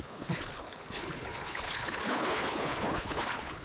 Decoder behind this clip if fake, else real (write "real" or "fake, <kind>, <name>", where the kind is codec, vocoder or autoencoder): fake, codec, HILCodec